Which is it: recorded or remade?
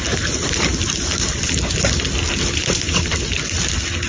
recorded